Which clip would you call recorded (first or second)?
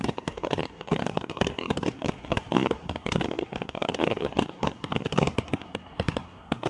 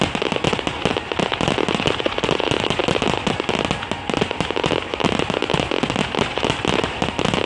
second